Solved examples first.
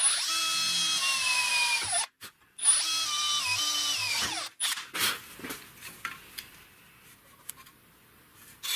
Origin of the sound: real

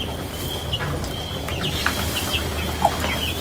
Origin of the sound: real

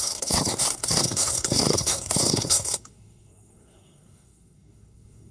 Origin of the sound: fake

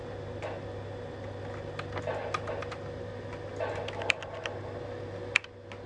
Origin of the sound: real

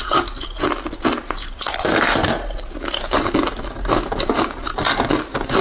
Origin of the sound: real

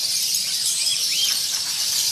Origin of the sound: fake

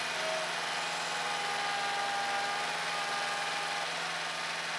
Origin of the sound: real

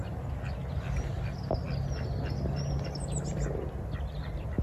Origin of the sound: real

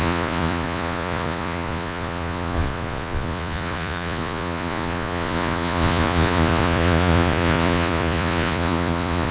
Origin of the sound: fake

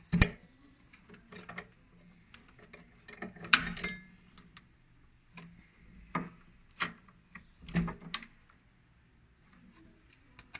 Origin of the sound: real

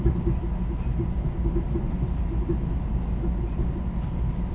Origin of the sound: real